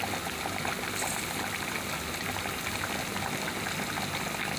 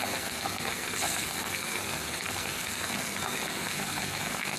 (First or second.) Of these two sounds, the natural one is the first